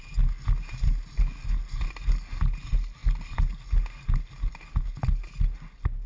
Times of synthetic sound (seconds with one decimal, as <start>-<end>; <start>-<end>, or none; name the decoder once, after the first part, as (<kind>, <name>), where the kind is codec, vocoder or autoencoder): none